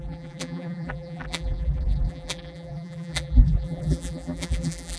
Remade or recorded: remade